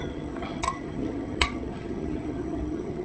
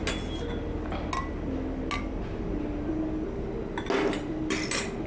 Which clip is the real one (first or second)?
second